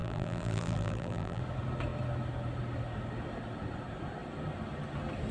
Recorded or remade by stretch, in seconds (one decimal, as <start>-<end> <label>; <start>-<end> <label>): 0.0-1.4 remade; 1.4-5.3 recorded